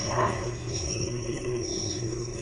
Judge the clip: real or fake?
fake